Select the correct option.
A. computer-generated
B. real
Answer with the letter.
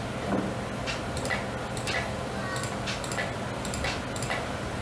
B